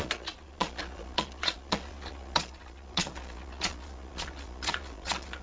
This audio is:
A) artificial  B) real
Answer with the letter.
A